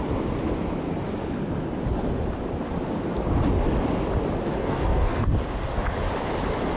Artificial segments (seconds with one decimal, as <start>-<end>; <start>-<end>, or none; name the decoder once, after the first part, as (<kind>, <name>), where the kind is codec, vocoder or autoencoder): 4.6-5.3 (codec, SNAC)